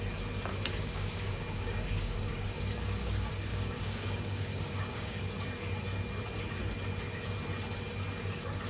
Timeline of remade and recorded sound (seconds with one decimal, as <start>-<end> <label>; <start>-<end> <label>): 0.0-0.5 recorded; 0.5-5.2 remade; 5.2-8.7 recorded